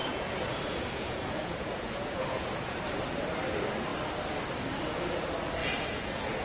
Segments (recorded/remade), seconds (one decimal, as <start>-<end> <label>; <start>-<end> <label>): 0.0-2.8 remade; 2.8-5.6 recorded; 5.6-6.4 remade